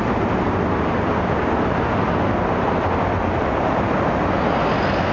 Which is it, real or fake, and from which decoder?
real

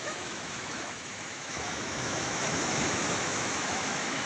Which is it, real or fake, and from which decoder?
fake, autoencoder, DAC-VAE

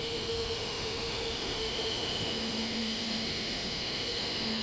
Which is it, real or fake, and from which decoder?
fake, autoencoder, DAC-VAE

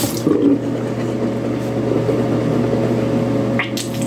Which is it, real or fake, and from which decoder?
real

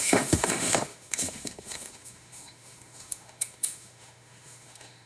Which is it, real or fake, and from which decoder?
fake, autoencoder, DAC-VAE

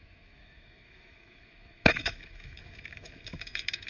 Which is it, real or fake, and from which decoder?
fake, autoencoder, DAC-VAE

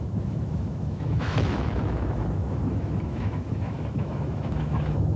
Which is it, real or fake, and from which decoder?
fake, autoencoder, DAC-VAE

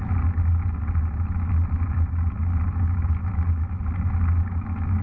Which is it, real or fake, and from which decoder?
real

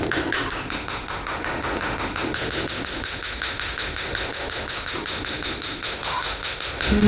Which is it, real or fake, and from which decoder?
fake, autoencoder, DAC-VAE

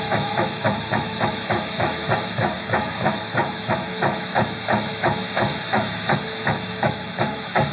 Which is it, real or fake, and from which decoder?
fake, autoencoder, DAC-VAE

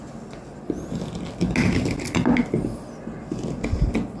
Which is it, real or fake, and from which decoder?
real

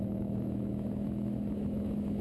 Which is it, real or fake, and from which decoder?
fake, autoencoder, DAC-VAE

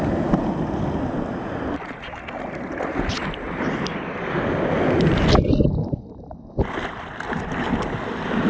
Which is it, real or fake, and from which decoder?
real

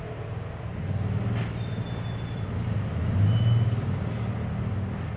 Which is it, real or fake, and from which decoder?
real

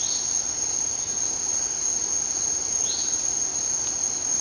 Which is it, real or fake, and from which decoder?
real